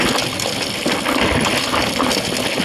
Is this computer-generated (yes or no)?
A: no